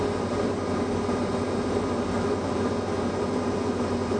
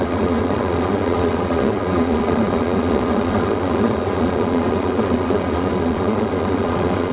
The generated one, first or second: second